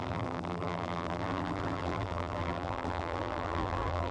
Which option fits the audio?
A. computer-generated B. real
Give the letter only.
A